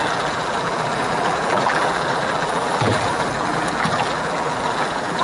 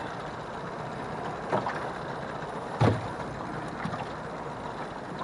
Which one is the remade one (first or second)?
first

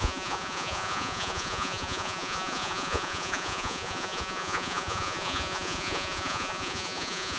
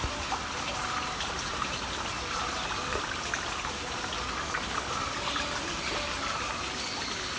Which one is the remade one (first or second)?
first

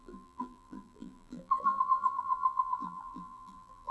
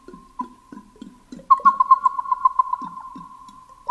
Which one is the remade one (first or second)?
first